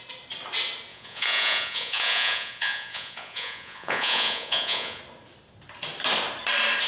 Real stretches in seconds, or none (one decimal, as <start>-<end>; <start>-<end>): 0.0-0.9; 5.0-6.9